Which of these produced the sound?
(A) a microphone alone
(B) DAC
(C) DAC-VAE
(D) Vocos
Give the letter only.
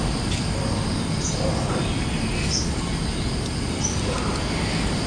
A